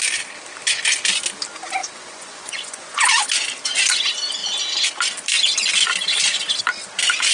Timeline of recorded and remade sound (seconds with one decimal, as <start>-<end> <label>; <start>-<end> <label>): 0.0-1.8 recorded; 1.8-3.2 remade; 3.2-7.3 recorded